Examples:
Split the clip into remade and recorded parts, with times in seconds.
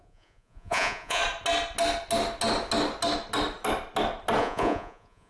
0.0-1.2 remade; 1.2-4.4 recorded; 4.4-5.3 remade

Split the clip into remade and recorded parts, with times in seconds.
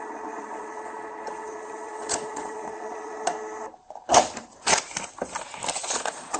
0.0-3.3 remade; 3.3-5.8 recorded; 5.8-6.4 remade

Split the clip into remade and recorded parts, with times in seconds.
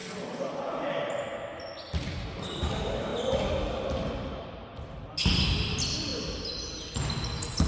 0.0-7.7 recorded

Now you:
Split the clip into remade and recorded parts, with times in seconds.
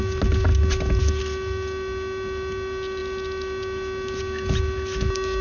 0.0-5.4 recorded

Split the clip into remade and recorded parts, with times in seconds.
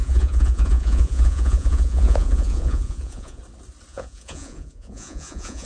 0.0-3.4 remade; 3.4-3.9 recorded; 3.9-5.7 remade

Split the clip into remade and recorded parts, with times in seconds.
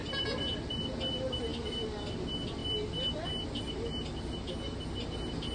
0.0-5.5 recorded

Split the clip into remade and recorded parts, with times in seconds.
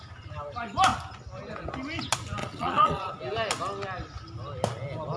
0.0-2.4 recorded; 2.4-3.1 remade; 3.1-5.2 recorded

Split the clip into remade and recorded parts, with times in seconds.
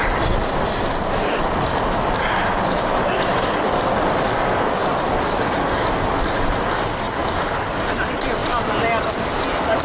0.0-9.8 recorded